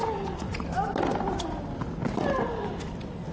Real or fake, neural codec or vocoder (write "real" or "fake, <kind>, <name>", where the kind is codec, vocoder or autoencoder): real